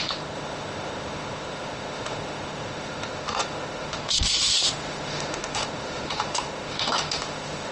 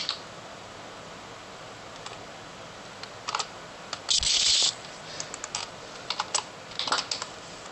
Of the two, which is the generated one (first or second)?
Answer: first